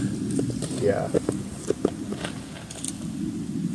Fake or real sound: real